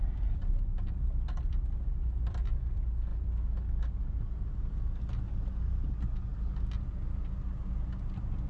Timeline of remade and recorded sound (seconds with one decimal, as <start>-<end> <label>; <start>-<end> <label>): 0.0-8.5 recorded